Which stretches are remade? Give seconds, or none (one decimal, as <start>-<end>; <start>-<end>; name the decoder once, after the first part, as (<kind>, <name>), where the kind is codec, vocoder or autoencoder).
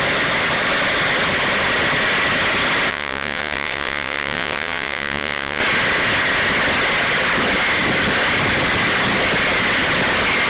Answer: 2.9-5.6 (vocoder, WaveNeXt)